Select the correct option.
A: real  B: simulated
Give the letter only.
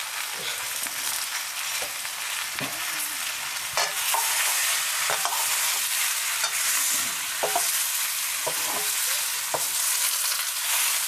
A